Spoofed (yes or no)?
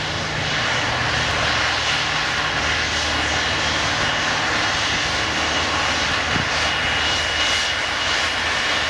no